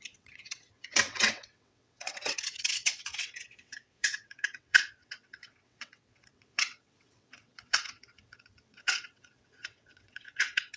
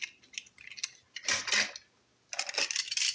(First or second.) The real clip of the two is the second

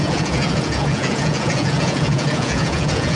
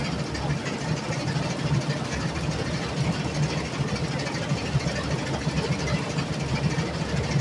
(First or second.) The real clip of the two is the second